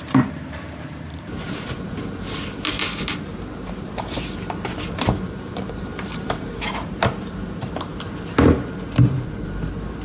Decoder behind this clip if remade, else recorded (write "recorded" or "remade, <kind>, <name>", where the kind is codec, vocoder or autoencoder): remade, vocoder, BigVGAN v2